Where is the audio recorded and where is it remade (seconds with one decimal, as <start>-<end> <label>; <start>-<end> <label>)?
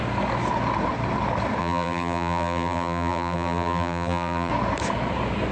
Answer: 0.0-1.6 recorded; 1.6-4.5 remade; 4.5-5.5 recorded